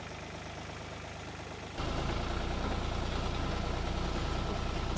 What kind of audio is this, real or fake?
real